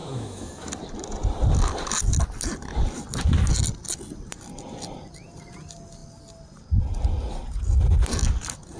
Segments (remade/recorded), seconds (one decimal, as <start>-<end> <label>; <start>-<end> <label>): 0.0-0.7 remade; 0.7-8.8 recorded